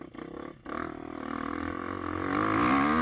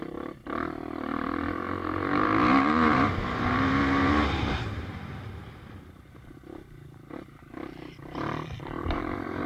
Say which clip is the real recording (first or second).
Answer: first